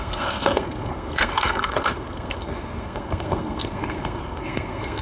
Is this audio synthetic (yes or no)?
yes